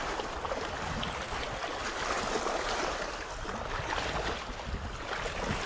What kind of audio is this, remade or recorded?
recorded